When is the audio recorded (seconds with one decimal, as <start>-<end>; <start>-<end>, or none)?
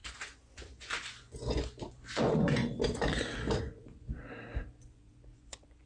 2.6-3.6; 4.2-4.7